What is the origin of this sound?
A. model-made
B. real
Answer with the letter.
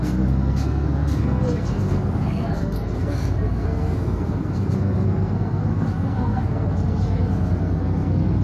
A